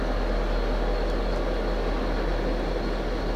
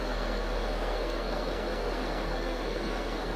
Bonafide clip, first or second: first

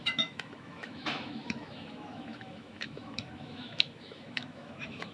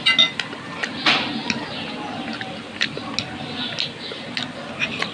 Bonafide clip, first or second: second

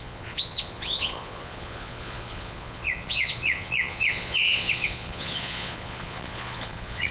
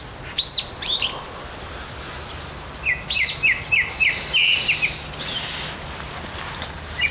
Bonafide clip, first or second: second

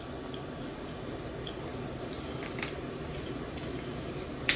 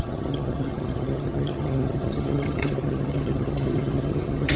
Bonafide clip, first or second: first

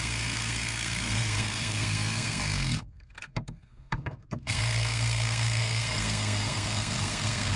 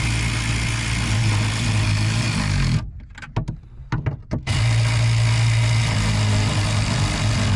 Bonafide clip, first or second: second